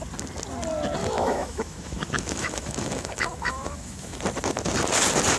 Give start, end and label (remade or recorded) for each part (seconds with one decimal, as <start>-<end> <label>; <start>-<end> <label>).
0.0-1.0 recorded; 1.0-4.2 remade; 4.2-5.4 recorded

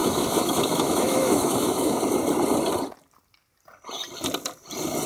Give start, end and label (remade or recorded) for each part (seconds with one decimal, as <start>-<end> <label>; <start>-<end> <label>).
0.0-2.0 remade; 2.0-5.1 recorded

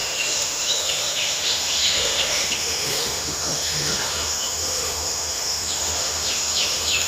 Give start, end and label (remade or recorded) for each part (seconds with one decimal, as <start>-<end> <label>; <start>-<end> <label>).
0.0-7.1 remade

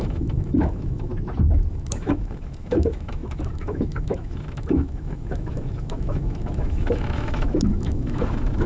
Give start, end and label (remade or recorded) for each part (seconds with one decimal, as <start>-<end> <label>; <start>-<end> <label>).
0.0-1.1 remade; 1.1-1.7 recorded; 1.7-8.7 remade